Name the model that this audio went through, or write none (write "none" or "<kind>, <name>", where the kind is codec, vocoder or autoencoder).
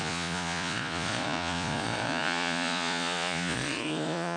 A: vocoder, Vocos